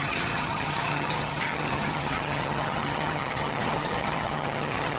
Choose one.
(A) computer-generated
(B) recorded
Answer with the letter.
A